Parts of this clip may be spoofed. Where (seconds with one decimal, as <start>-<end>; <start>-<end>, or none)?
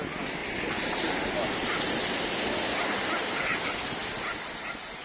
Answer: none